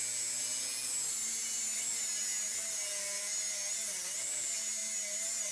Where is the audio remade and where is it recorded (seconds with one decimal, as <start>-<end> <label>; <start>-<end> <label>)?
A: 0.0-5.5 recorded